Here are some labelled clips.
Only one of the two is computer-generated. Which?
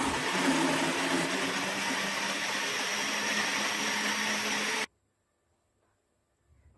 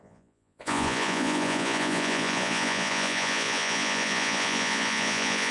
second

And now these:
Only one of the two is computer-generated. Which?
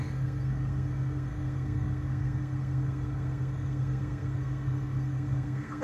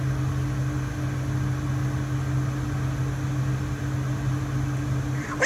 first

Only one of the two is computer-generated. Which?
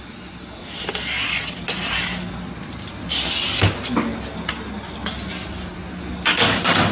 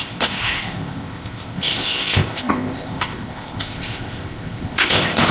second